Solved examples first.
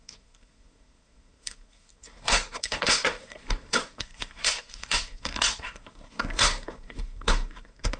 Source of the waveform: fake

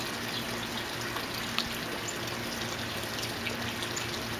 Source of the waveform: real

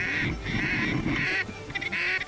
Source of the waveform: real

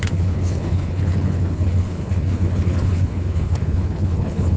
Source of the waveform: fake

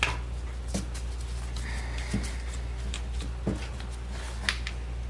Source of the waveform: real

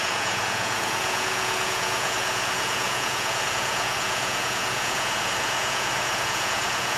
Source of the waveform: fake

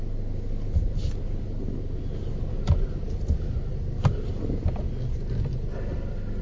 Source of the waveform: real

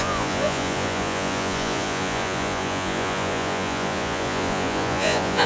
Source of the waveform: fake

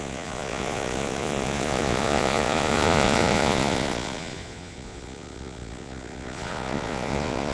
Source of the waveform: fake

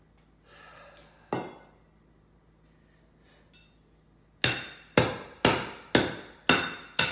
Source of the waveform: real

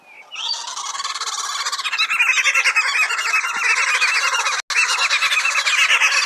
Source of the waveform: real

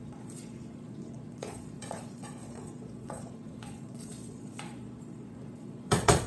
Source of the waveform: fake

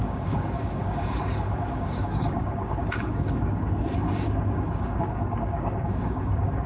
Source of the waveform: fake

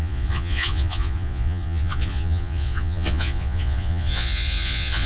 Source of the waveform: fake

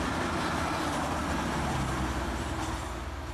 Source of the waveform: real